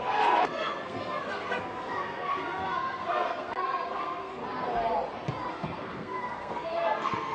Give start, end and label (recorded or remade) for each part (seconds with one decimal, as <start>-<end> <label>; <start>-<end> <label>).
0.0-4.4 remade; 4.4-5.5 recorded; 5.5-7.3 remade